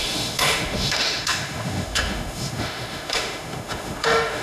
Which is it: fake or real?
fake